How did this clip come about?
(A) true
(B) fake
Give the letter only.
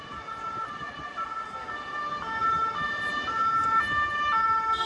A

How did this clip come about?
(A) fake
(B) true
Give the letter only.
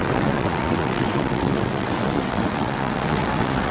A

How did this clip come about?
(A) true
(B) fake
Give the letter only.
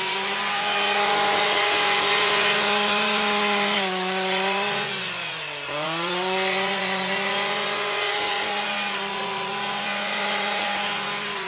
B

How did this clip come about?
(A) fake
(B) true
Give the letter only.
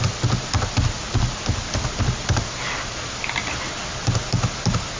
B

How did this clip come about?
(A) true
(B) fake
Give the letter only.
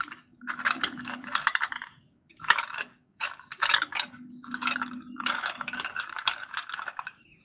B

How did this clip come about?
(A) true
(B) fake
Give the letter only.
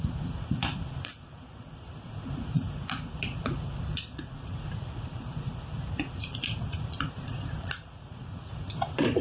B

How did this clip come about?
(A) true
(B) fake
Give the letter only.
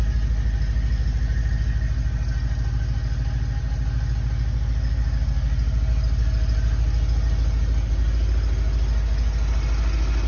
A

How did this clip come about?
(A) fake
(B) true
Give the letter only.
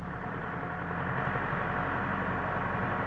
B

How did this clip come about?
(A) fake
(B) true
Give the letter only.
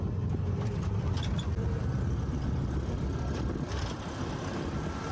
B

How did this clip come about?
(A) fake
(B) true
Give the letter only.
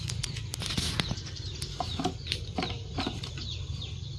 B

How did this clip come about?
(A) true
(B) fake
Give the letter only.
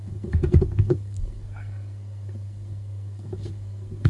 B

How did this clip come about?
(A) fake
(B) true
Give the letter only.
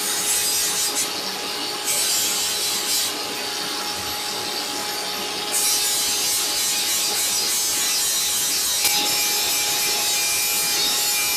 B